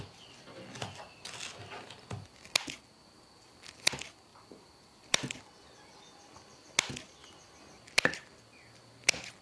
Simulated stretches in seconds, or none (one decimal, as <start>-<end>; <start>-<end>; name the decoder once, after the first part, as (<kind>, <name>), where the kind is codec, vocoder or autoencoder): 4.3-5.4 (vocoder, BigVGAN v2)